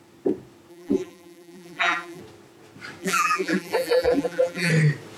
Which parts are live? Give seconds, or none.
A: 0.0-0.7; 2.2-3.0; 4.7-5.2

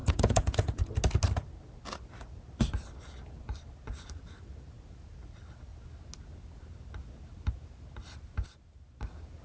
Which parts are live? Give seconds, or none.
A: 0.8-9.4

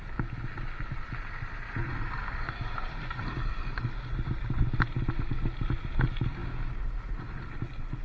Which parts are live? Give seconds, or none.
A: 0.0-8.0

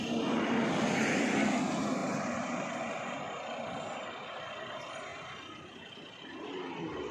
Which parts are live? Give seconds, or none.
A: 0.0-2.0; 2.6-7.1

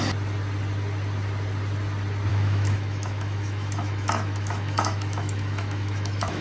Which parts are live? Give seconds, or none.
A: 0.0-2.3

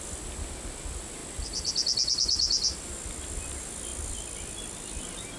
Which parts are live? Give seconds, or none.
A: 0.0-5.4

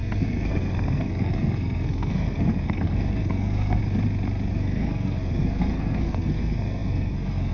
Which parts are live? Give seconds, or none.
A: 3.8-4.5